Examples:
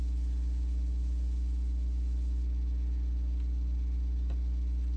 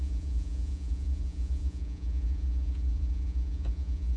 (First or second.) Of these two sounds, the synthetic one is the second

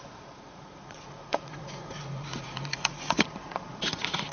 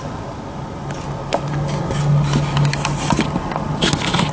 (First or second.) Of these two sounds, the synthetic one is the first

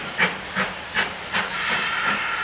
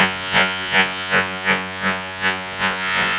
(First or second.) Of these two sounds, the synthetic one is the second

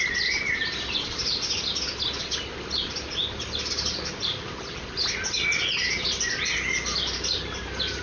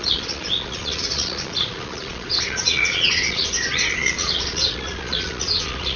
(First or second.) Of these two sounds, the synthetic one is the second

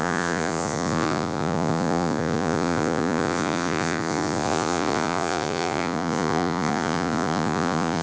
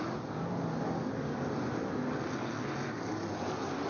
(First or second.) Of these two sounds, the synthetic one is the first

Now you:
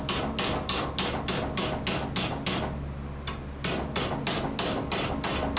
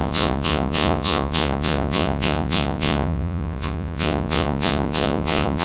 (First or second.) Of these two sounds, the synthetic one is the second